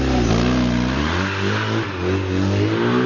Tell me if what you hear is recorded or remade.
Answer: recorded